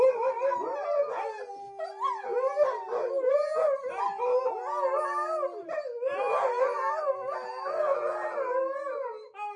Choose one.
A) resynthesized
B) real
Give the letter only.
B